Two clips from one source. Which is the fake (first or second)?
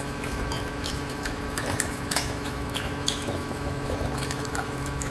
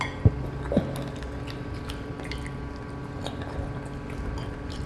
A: first